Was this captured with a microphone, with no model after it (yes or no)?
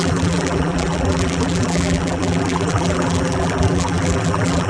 no